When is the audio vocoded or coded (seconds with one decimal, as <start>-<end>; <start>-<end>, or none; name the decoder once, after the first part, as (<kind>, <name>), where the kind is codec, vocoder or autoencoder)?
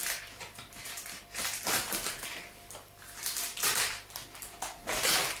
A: none